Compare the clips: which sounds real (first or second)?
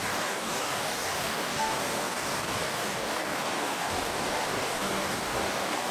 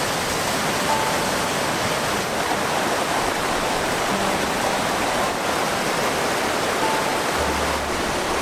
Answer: second